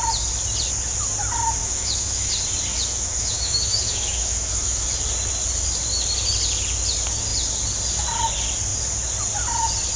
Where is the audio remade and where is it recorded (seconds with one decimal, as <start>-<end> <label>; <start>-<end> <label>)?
0.0-1.6 recorded; 1.6-2.3 remade; 2.3-2.7 recorded; 2.7-5.0 remade; 5.0-10.0 recorded